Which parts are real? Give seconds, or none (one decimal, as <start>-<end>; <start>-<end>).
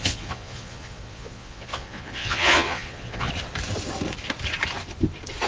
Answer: 3.3-5.5